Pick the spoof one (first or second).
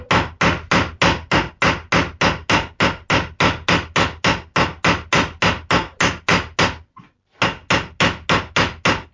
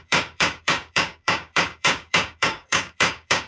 second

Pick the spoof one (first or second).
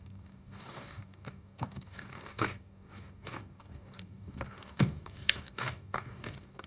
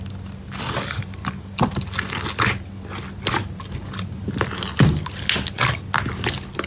first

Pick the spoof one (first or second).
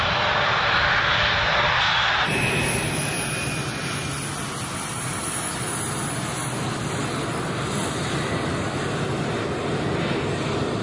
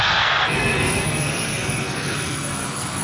second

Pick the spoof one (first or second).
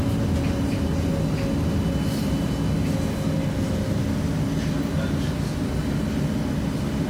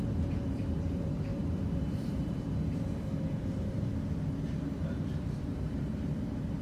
second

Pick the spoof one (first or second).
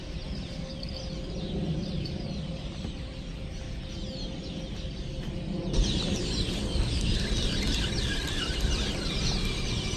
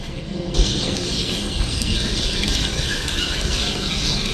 second